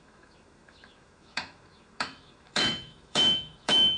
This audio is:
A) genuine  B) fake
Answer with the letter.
B